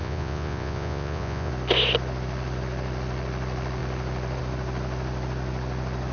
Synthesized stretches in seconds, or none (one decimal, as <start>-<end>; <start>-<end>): 0.0-1.5